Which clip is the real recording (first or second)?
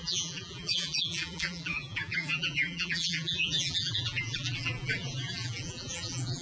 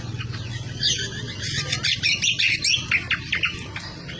second